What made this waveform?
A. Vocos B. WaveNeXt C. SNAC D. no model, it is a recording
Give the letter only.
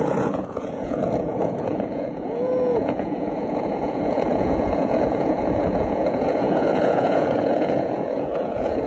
A